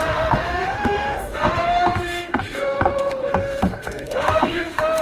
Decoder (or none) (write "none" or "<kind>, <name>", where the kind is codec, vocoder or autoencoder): autoencoder, DAC-VAE